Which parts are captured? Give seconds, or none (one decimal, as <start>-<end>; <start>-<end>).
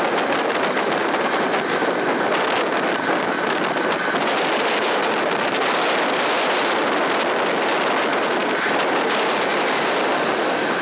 0.0-10.8